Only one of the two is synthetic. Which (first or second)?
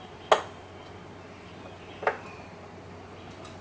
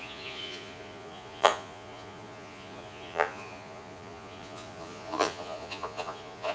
second